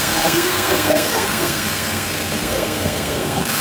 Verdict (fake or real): fake